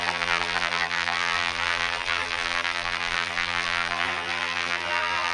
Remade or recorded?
remade